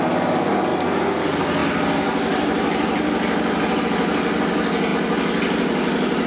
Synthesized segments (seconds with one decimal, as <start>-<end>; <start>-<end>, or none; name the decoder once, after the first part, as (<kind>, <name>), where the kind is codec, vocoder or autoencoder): none